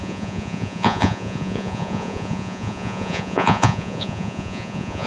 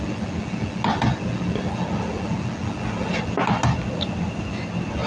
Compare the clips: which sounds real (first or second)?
second